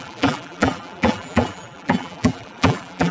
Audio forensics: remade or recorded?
remade